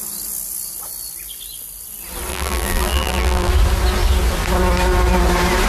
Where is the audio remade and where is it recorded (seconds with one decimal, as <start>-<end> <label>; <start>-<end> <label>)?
0.0-2.3 recorded; 2.3-3.5 remade; 3.5-5.7 recorded